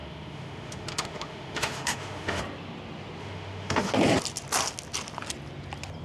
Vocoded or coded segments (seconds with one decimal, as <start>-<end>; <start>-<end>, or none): 0.0-2.4; 3.2-3.9